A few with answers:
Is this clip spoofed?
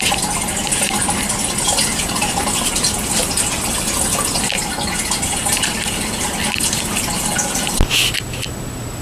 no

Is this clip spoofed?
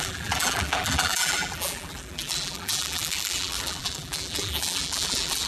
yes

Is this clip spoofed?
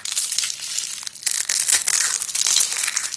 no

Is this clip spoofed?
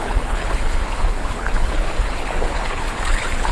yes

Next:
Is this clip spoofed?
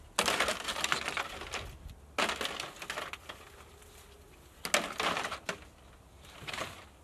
no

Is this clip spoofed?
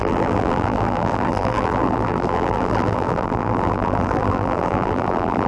yes